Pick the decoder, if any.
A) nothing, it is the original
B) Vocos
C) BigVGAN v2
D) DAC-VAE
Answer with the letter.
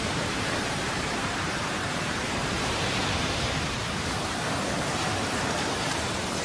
C